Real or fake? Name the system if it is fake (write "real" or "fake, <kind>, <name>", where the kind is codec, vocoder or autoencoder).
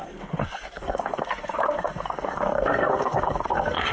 fake, codec, SNAC